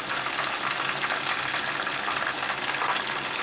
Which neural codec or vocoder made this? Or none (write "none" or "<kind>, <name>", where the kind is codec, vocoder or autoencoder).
none